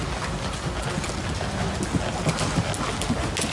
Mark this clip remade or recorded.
recorded